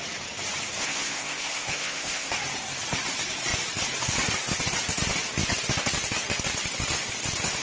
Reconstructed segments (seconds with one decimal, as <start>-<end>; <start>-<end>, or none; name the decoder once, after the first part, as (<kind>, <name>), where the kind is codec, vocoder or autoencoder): 0.8-2.3 (codec, ZipCodec)